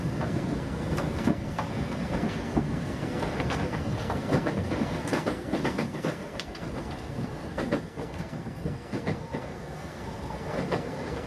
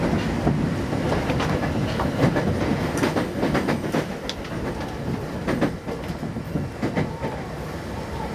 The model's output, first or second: first